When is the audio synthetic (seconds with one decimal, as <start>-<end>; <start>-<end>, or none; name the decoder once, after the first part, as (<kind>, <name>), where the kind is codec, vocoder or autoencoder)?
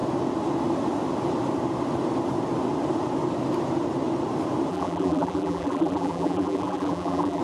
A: 4.7-7.4 (vocoder, BigVGAN v2)